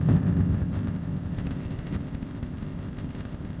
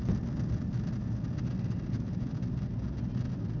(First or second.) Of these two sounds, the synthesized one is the first